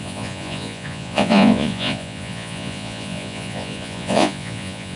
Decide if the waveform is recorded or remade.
remade